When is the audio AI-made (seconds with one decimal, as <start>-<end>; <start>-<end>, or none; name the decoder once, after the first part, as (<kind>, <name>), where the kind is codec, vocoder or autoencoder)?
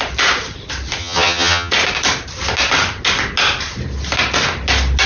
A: 1.0-1.7 (vocoder, HiFi-GAN)